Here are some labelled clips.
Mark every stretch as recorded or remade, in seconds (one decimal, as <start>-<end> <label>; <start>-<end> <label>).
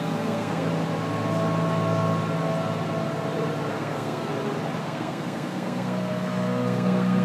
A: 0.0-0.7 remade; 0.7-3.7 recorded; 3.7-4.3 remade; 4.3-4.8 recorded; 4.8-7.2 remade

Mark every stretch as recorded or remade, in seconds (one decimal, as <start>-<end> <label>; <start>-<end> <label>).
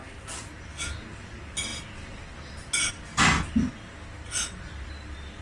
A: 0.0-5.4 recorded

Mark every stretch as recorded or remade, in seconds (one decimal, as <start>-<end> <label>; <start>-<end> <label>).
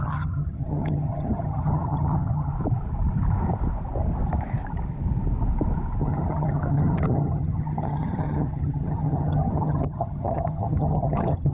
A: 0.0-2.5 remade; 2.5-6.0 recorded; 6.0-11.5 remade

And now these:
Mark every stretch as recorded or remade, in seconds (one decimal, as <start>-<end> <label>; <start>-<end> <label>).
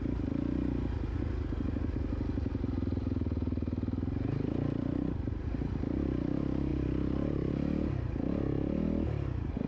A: 0.0-2.9 recorded; 2.9-5.7 remade; 5.7-9.7 recorded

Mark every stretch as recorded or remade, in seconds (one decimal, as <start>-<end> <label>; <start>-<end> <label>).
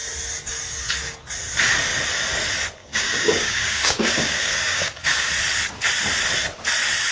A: 0.0-2.8 recorded; 2.8-5.3 remade; 5.3-7.1 recorded